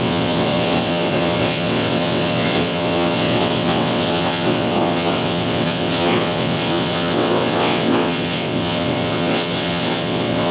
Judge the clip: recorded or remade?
remade